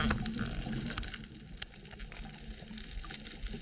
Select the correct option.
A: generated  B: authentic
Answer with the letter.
B